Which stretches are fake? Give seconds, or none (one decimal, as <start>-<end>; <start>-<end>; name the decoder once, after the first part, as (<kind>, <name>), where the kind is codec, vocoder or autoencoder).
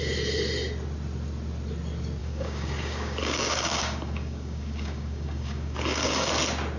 2.2-6.3 (codec, DAC)